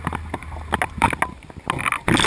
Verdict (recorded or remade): recorded